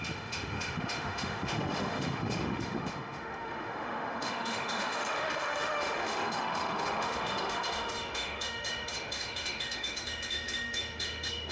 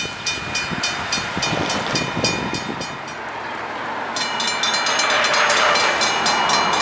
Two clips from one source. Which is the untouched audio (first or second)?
second